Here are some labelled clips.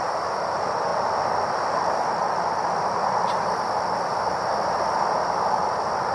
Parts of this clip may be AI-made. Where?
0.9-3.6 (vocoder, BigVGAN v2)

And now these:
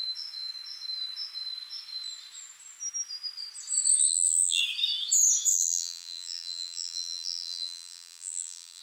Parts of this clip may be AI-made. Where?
4.1-4.6 (vocoder, BigVGAN v2); 5.5-8.8